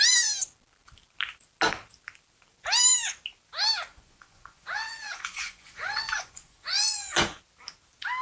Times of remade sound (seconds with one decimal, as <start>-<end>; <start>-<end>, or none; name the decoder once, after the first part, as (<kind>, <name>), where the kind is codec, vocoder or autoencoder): 3.9-7.4 (vocoder, Vocos)